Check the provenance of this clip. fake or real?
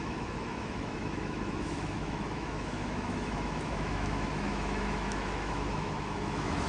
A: fake